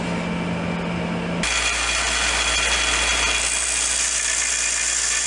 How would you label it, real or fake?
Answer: real